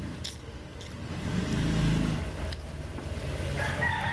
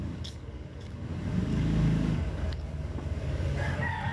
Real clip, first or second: first